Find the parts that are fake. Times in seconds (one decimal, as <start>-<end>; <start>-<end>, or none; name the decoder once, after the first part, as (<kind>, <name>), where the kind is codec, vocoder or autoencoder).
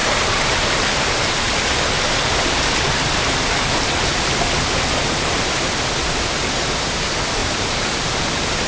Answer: 7.4-8.2 (vocoder, BigVGAN v2)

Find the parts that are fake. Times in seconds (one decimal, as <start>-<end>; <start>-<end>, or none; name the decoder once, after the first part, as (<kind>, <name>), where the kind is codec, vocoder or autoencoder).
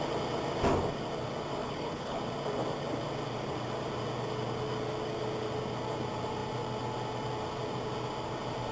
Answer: 1.6-2.2 (codec, HILCodec)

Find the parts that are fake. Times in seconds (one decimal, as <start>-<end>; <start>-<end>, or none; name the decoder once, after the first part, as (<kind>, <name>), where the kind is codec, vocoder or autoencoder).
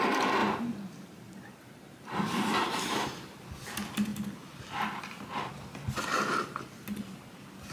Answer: 0.4-3.3 (vocoder, BigVGAN v2)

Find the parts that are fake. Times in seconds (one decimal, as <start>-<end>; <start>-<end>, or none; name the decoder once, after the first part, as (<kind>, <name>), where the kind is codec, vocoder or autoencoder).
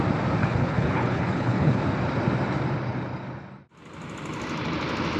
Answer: 0.4-1.8 (codec, HILCodec)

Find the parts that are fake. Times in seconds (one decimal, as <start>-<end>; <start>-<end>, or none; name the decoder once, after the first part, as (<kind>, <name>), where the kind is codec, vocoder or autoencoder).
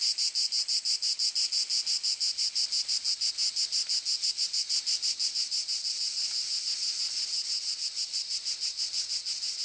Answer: none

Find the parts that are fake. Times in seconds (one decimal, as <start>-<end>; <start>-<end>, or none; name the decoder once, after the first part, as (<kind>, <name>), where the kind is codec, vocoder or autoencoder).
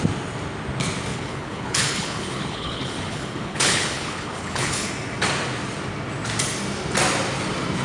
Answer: 1.1-4.9 (codec, HILCodec)